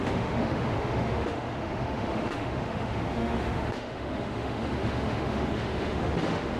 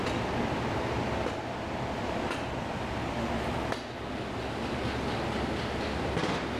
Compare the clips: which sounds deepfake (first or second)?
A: first